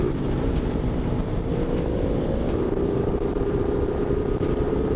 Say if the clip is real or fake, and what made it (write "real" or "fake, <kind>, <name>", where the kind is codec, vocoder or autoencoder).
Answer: fake, vocoder, BigVGAN v2